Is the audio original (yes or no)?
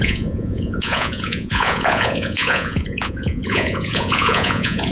no